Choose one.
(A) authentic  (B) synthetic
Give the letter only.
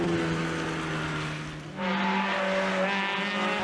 A